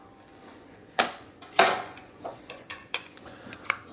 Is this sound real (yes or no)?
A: no